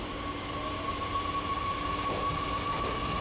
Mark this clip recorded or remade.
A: recorded